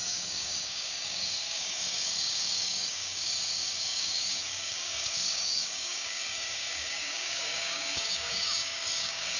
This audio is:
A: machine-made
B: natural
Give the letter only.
A